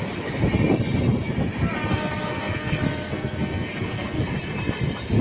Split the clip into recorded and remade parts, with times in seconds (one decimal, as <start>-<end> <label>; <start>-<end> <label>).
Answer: 0.0-1.9 recorded; 1.9-4.2 remade; 4.2-5.2 recorded